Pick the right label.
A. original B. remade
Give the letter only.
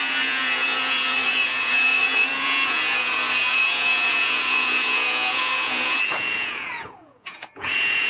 B